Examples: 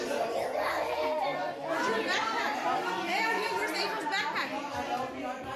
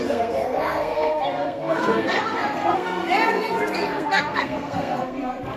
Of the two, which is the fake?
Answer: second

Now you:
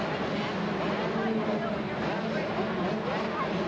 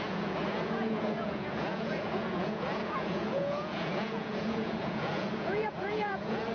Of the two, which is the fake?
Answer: second